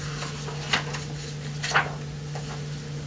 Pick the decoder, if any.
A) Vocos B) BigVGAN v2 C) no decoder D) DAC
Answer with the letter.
C